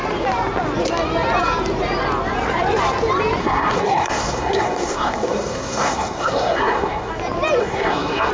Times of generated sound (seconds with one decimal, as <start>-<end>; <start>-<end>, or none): 3.4-7.1; 7.6-8.3